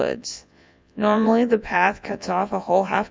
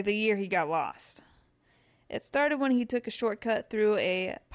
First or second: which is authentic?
second